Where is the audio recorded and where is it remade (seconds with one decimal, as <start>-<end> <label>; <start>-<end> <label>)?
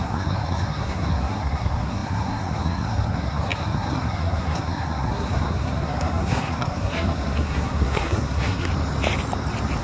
0.0-8.7 remade; 8.7-9.8 recorded